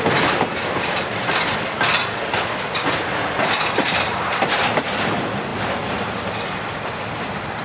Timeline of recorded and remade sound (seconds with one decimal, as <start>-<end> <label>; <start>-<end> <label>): 0.0-7.6 recorded